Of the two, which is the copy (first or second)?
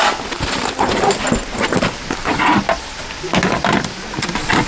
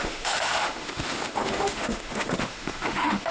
second